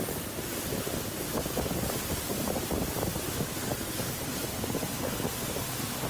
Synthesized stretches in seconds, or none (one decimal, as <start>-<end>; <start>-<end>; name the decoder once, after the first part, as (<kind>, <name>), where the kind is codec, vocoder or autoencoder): none